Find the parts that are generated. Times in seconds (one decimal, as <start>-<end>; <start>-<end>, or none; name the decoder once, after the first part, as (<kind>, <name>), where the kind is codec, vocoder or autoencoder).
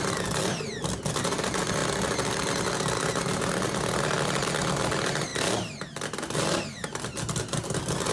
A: none